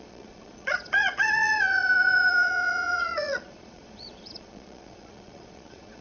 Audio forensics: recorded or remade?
remade